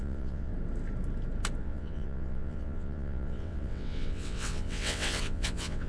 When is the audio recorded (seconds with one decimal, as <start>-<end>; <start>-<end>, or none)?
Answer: 0.5-1.6